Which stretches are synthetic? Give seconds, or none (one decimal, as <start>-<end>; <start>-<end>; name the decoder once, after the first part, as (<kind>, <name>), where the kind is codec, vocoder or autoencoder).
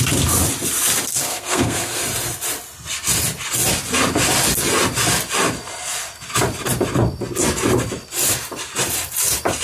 1.2-2.0 (codec, SNAC)